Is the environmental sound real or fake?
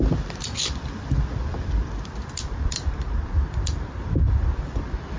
fake